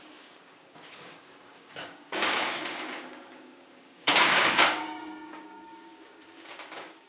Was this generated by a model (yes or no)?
yes